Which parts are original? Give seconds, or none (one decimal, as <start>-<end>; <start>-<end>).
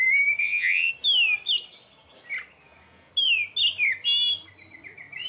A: 0.0-0.4; 0.9-5.3